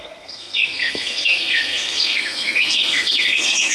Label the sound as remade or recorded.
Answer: remade